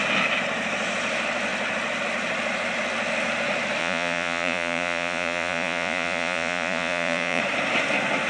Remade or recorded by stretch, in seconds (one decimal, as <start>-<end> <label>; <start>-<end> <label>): 0.0-3.8 recorded; 3.8-7.4 remade; 7.4-8.3 recorded